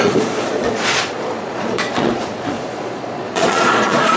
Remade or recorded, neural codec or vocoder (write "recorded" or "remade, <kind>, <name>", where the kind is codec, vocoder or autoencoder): remade, vocoder, Vocos